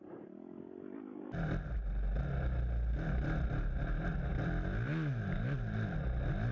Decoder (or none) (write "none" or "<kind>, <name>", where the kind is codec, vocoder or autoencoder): none